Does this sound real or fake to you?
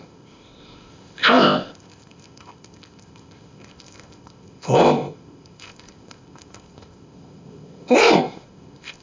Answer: fake